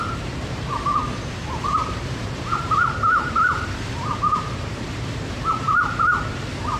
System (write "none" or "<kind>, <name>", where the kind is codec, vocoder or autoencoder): vocoder, BigVGAN v2